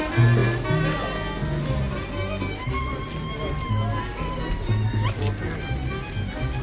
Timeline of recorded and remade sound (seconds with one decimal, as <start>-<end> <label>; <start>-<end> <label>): 0.0-6.6 recorded